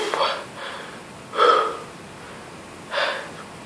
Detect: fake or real real